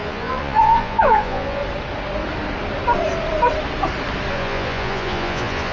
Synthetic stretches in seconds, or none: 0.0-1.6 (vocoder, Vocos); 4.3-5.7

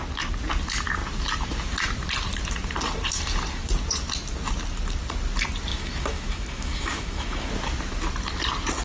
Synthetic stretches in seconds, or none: 5.7-7.5 (autoencoder, DAC-VAE)